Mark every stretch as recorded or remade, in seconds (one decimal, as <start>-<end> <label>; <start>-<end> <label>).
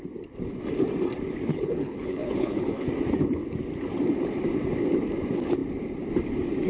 0.0-1.5 recorded; 1.5-2.9 remade; 2.9-6.7 recorded